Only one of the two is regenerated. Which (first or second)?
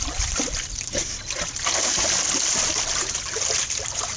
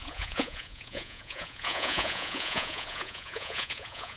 second